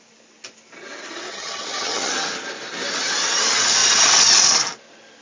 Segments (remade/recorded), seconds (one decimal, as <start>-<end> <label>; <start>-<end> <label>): 0.0-1.3 recorded; 1.3-2.1 remade; 2.1-5.2 recorded